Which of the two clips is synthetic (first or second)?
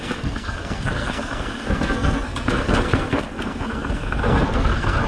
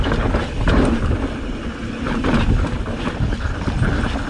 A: first